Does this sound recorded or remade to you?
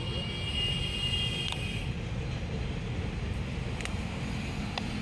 recorded